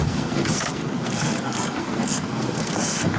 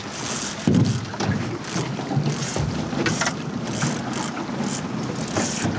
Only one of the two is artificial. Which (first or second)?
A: first